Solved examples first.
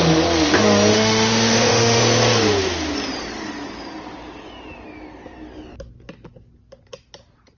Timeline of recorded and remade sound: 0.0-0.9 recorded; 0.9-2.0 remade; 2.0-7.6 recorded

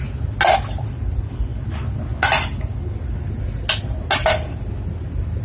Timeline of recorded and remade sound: 0.0-5.4 recorded

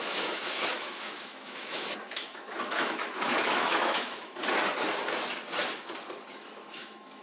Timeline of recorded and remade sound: 0.0-4.4 remade; 4.4-6.3 recorded; 6.3-7.2 remade

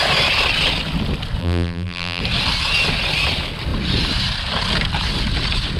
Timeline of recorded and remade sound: 0.0-1.4 recorded; 1.4-2.2 remade; 2.2-5.8 recorded